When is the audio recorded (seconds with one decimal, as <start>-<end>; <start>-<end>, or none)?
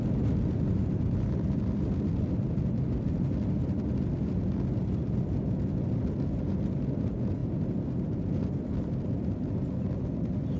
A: 0.0-10.6